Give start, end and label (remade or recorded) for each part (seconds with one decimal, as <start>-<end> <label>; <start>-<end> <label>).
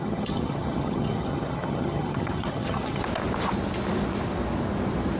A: 0.0-3.0 remade; 3.0-5.2 recorded